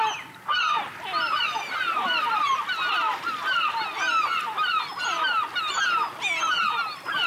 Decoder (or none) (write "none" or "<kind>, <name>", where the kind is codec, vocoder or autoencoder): none